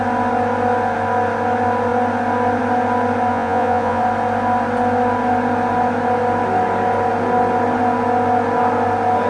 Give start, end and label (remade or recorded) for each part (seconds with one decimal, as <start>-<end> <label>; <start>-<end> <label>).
0.0-3.3 recorded; 3.3-4.0 remade; 4.0-9.3 recorded